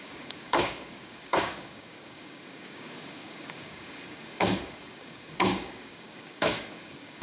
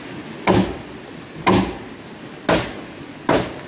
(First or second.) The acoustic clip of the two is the second